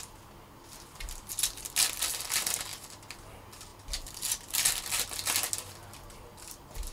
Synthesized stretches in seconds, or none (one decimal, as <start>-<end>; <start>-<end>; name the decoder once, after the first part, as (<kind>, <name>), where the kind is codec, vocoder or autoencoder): none